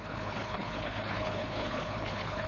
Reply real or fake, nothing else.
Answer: fake